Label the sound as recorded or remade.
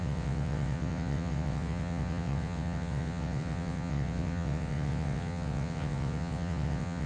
remade